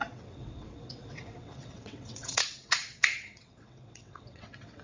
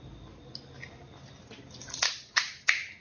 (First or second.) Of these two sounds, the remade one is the first